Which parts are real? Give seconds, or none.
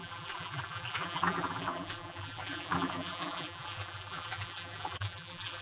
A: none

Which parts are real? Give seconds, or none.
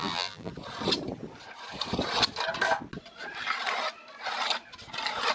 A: 0.5-5.3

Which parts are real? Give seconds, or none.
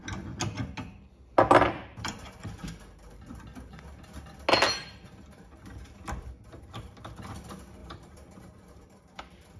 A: 0.0-1.9; 2.7-7.8; 9.2-9.6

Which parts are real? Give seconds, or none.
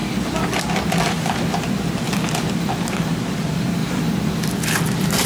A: 0.0-3.2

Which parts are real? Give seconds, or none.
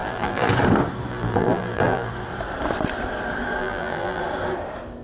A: 0.5-1.1; 2.1-3.6; 4.2-5.0